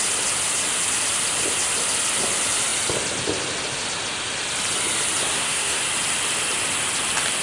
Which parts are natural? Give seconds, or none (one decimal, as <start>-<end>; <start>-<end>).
0.0-5.2; 5.8-7.4